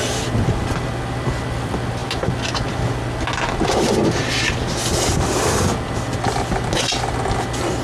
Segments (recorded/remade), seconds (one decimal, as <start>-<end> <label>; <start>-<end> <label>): 0.0-7.8 recorded